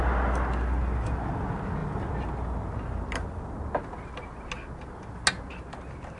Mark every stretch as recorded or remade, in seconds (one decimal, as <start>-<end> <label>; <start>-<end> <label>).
0.0-6.2 recorded